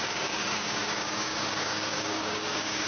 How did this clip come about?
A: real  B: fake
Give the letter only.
B